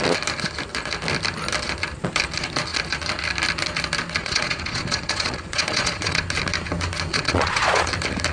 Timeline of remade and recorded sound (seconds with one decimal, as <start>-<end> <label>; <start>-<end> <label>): 0.0-4.2 recorded; 4.2-6.2 remade; 6.2-7.1 recorded; 7.1-7.9 remade; 7.9-8.3 recorded